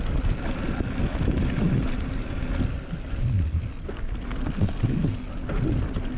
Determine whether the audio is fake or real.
real